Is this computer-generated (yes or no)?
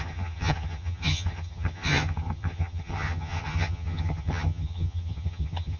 yes